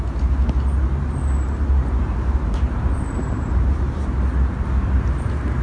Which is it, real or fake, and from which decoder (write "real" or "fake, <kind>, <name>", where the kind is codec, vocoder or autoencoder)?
real